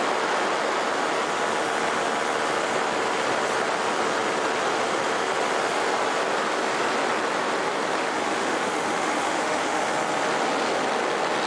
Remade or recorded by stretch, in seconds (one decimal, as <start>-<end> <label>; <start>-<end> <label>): 0.0-8.0 recorded; 8.0-9.8 remade; 9.8-11.5 recorded